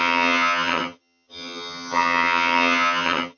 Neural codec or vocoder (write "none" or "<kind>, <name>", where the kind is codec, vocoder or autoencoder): vocoder, HiFi-GAN